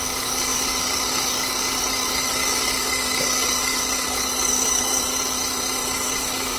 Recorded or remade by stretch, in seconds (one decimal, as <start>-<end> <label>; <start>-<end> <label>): 0.0-5.1 remade; 5.1-6.1 recorded; 6.1-6.6 remade